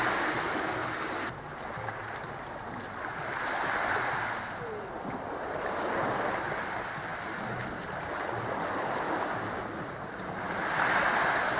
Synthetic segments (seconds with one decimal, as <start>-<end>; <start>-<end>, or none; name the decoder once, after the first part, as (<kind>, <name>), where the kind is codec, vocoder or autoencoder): none